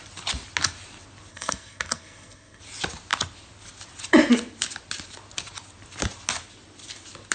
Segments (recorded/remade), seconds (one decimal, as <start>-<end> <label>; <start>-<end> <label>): 0.0-1.3 recorded; 1.3-2.6 remade; 2.6-7.3 recorded

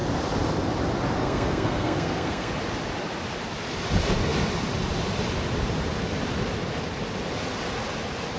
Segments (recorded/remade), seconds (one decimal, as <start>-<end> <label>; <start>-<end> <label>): 0.0-1.2 recorded; 1.2-2.5 remade; 2.5-8.4 recorded